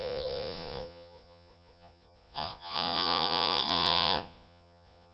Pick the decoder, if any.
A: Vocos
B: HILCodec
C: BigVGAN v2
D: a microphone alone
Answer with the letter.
A